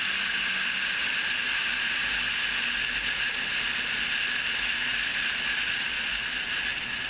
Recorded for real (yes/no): yes